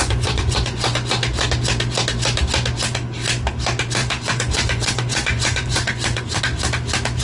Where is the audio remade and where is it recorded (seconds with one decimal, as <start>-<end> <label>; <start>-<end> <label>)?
0.0-1.1 remade; 1.1-4.0 recorded; 4.0-6.4 remade; 6.4-7.2 recorded